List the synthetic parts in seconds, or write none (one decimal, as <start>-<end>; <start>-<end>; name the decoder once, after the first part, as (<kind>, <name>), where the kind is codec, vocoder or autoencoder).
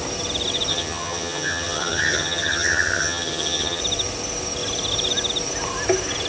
0.7-3.8 (vocoder, HiFi-GAN)